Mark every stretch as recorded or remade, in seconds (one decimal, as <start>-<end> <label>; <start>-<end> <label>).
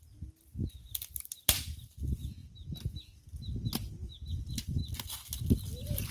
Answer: 0.0-6.1 recorded